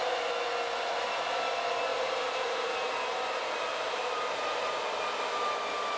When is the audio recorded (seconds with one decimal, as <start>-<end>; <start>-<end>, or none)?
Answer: 0.0-1.9; 4.7-6.0